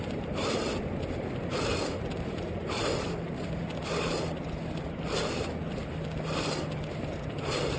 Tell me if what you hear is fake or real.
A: real